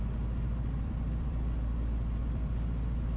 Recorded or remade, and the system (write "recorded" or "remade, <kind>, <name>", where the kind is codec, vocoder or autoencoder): remade, vocoder, BigVGAN v2